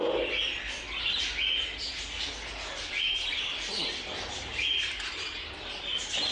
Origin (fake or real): real